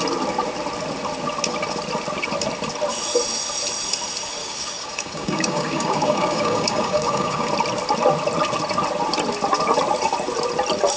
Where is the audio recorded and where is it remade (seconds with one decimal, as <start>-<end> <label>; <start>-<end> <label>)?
0.0-4.4 recorded; 4.4-7.5 remade; 7.5-11.0 recorded